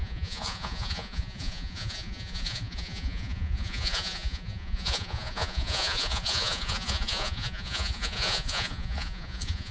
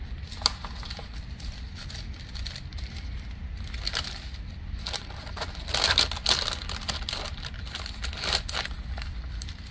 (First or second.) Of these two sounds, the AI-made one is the first